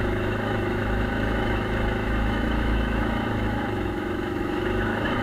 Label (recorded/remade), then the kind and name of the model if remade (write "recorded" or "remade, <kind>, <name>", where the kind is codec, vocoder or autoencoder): remade, autoencoder, DAC-VAE